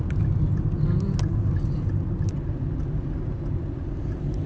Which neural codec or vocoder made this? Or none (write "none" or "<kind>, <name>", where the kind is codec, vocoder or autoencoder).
none